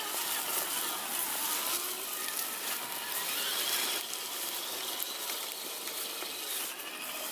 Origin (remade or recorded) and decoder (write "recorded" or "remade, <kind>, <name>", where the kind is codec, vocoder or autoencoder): recorded